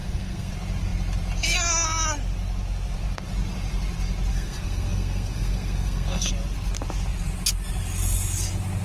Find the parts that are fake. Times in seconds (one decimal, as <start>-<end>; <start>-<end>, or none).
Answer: 0.0-0.5; 4.3-6.3